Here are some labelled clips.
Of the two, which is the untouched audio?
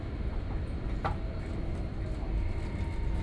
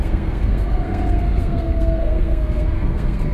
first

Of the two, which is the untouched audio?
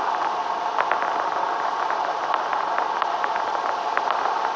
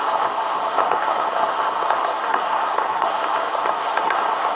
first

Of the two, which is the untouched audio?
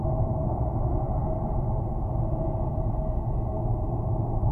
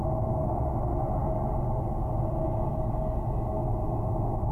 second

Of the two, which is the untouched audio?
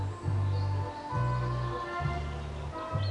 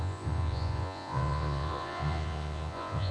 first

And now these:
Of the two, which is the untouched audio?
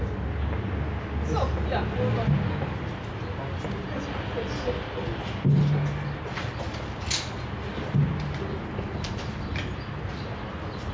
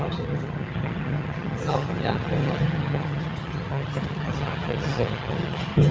first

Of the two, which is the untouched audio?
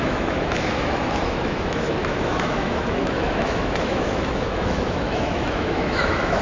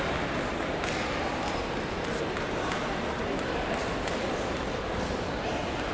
second